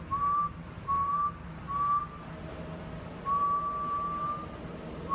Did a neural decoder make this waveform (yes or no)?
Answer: no